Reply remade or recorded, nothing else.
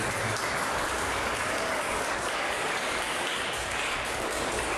remade